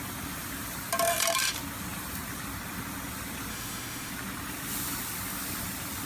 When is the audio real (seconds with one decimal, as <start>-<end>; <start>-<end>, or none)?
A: 0.0-3.5; 4.1-6.1